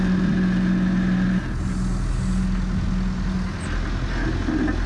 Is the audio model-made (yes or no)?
no